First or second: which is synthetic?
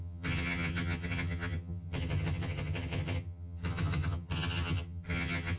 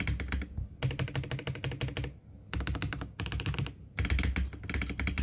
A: first